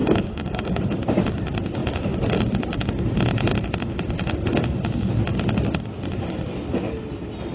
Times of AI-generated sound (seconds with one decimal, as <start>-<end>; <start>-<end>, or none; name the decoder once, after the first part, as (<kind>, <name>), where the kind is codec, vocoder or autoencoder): 0.0-0.8 (codec, DAC)